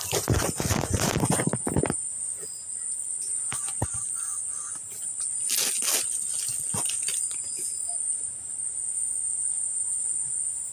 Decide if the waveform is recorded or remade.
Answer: recorded